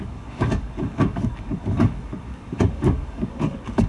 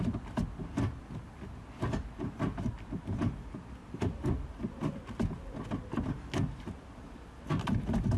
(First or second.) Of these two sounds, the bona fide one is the second